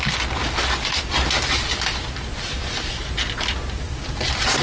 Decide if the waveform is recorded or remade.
recorded